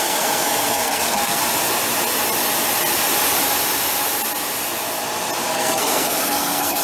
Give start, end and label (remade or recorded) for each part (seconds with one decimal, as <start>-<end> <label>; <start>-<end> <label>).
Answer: 0.0-1.4 remade; 1.4-5.5 recorded; 5.5-6.8 remade